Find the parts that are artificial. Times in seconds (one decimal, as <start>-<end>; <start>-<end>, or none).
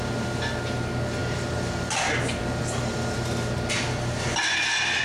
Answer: none